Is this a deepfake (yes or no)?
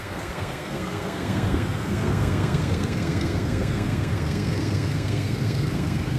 yes